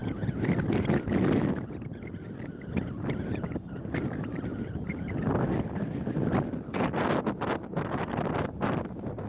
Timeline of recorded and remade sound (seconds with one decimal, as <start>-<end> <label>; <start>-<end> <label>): 0.0-9.3 recorded